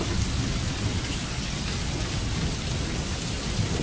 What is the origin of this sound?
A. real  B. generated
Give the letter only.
A